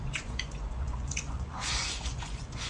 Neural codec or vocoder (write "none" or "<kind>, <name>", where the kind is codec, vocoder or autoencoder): vocoder, Vocos